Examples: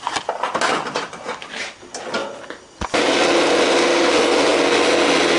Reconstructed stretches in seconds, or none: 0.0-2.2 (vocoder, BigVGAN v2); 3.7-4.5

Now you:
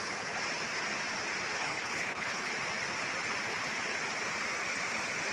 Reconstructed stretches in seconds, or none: 1.5-2.5 (codec, HILCodec)

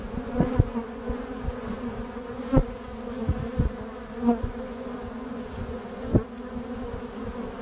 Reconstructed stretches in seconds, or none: 0.0-2.6 (vocoder, Vocos); 4.4-6.1